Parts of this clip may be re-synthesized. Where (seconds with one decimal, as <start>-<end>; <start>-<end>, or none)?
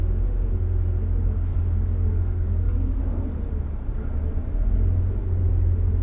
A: 1.5-3.0